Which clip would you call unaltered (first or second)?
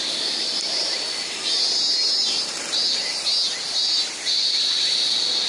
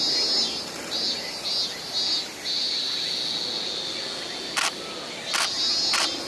second